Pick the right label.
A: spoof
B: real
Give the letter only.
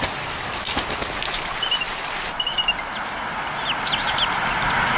B